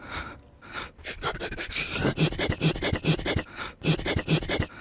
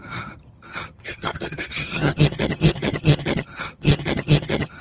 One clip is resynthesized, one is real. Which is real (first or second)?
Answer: first